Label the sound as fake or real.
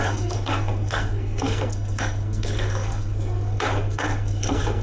fake